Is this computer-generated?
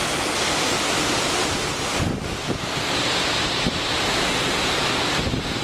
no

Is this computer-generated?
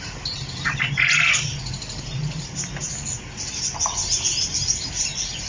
no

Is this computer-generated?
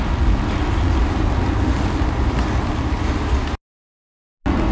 no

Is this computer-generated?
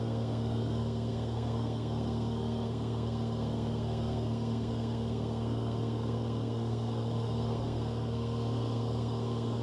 yes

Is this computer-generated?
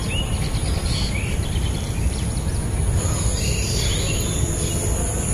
no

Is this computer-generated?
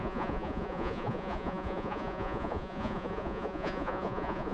yes